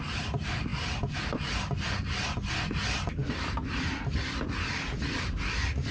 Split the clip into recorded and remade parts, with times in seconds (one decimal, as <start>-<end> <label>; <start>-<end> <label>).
0.0-5.9 recorded